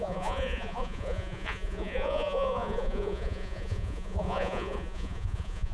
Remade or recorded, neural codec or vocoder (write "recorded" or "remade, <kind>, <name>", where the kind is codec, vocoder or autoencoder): remade, vocoder, Vocos